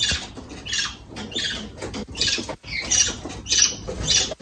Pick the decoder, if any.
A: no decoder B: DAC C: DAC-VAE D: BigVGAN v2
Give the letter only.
A